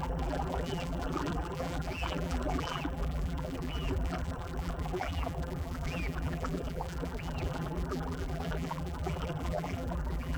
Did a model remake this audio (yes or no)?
yes